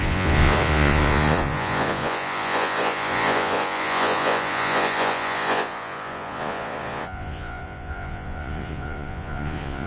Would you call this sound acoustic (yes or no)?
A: no